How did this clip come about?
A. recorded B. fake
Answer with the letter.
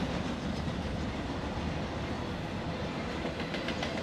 A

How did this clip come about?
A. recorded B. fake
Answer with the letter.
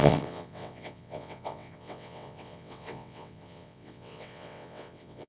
B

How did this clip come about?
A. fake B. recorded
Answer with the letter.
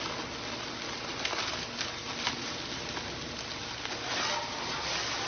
B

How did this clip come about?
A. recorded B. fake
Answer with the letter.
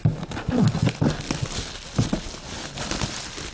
A